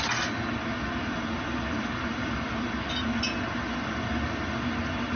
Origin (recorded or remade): recorded